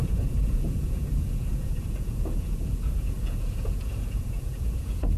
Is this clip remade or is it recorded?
remade